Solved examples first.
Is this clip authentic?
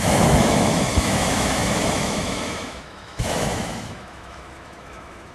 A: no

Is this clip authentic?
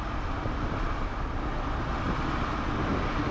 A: yes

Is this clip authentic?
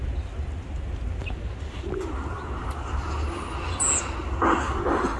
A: yes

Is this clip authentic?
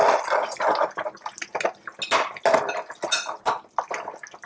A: yes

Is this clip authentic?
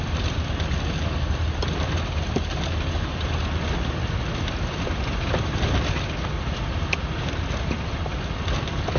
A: yes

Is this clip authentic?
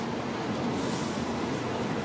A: yes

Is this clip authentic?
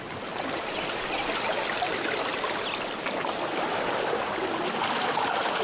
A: yes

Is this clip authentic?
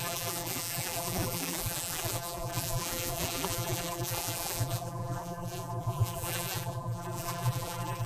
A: no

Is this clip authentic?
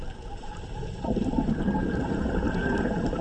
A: no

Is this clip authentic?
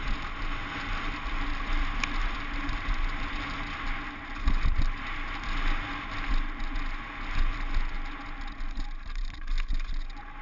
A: yes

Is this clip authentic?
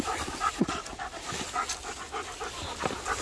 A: yes